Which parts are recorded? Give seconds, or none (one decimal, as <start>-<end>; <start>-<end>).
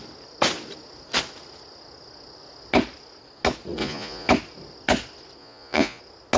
0.0-3.8; 4.3-5.4; 6.0-6.4